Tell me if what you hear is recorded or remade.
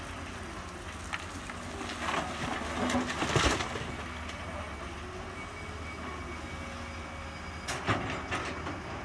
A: recorded